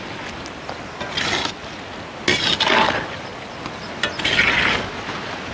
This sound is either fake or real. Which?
real